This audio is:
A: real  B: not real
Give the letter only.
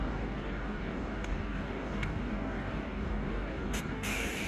B